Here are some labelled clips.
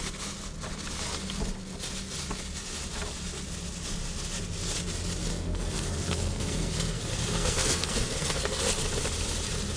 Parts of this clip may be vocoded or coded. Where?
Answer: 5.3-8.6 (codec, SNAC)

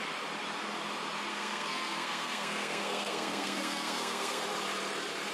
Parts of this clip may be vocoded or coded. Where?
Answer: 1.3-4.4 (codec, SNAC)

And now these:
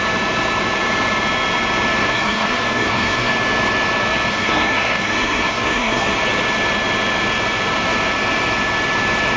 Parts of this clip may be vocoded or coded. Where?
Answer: 2.0-3.3 (codec, SNAC); 4.3-6.2

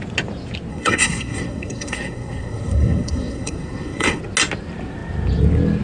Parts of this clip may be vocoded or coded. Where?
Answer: 0.7-4.2 (codec, SNAC)

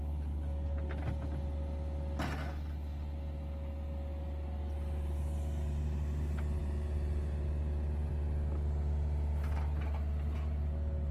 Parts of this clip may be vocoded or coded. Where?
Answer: none